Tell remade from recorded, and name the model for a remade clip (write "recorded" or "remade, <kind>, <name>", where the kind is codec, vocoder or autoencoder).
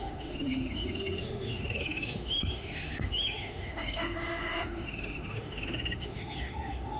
remade, autoencoder, DAC-VAE